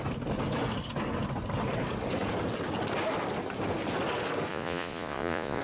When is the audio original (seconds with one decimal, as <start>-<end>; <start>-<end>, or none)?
0.0-4.5